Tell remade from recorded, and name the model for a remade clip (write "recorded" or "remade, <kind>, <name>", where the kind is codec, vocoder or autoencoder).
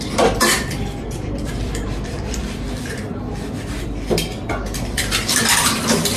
remade, vocoder, BigVGAN v2